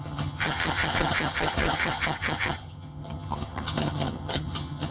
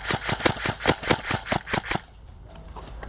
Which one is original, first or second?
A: second